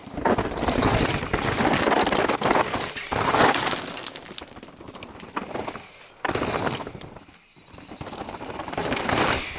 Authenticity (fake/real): real